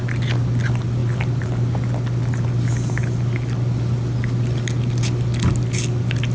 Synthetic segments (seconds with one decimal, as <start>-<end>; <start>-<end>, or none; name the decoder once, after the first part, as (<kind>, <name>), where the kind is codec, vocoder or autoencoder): none